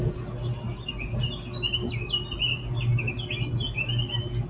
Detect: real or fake real